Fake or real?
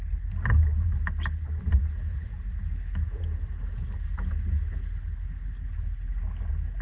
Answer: real